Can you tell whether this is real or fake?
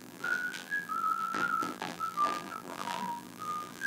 fake